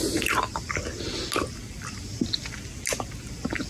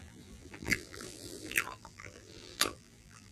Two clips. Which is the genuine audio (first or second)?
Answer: first